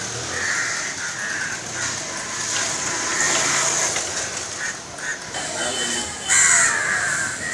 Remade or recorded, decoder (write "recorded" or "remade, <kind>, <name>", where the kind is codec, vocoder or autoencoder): recorded